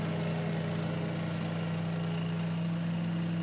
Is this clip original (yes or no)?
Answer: yes